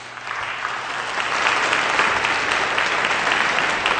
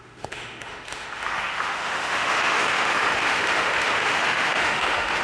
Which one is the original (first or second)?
first